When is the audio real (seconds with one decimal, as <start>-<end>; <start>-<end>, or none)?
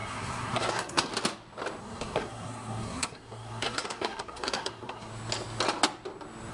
1.1-1.8; 5.1-6.5